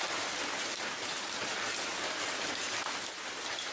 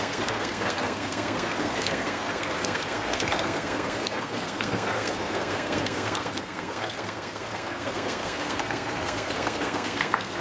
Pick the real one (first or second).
first